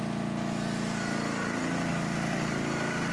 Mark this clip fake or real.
real